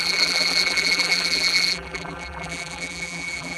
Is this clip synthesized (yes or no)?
yes